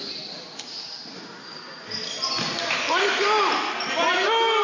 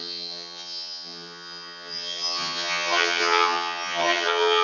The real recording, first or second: first